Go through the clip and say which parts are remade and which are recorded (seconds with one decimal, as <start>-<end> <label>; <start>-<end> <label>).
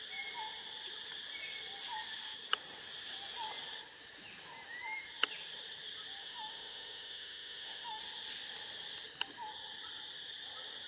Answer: 0.0-6.2 recorded; 6.2-8.0 remade; 8.0-10.9 recorded